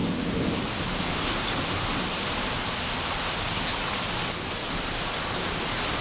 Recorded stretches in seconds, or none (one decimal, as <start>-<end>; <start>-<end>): 0.0-2.4